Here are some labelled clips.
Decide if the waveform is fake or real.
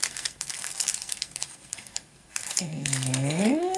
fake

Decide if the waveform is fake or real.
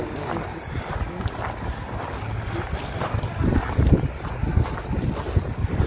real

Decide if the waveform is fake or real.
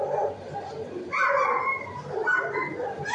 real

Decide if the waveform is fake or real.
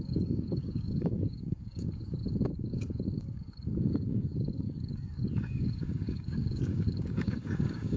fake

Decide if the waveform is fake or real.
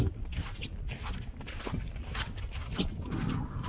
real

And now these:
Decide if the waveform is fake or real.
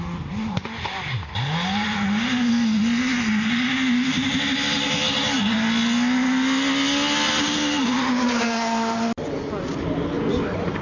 real